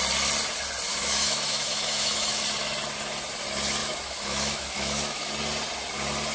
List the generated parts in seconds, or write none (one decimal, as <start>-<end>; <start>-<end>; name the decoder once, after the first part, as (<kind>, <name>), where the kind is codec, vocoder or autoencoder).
0.9-2.4 (autoencoder, DAC-VAE); 3.8-5.3